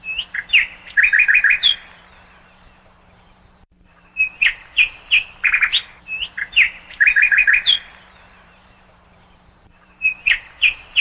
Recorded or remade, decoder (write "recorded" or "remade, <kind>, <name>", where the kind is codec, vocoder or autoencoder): remade, vocoder, BigVGAN v2